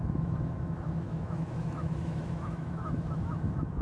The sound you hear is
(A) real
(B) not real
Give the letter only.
B